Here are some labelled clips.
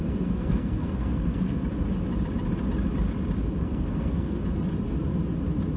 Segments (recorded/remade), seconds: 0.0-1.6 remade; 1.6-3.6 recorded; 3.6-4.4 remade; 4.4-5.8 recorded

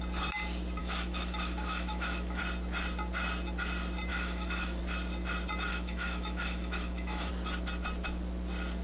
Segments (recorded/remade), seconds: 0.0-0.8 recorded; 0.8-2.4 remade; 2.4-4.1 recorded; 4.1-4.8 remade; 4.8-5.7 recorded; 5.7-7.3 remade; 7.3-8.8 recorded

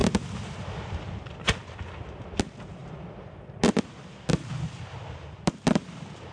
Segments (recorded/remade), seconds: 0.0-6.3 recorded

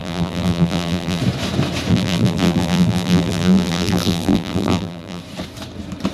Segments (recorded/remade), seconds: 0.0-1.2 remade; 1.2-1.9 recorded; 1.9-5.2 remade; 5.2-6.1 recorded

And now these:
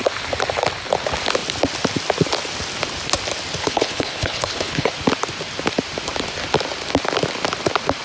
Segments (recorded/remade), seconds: 0.0-3.6 recorded; 3.6-4.9 remade; 4.9-8.0 recorded

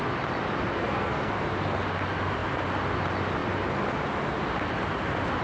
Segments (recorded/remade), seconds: 0.0-0.8 recorded; 0.8-1.3 remade; 1.3-5.4 recorded

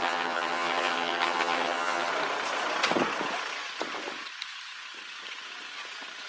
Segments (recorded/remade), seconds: 0.0-2.1 remade; 2.1-6.3 recorded

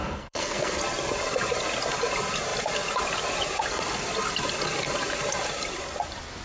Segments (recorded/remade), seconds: 0.0-0.8 remade; 0.8-6.4 recorded